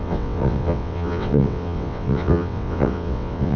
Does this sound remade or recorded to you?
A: remade